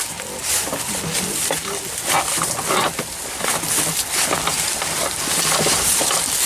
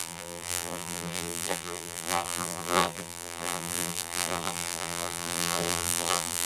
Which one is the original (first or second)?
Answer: first